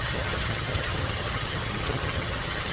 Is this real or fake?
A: fake